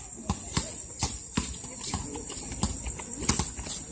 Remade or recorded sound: recorded